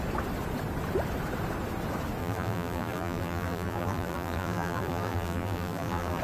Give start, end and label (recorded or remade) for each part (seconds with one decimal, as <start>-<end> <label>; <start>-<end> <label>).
0.0-2.2 recorded; 2.2-6.2 remade